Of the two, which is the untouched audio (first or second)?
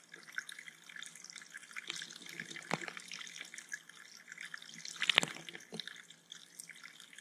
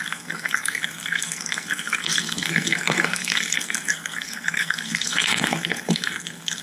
first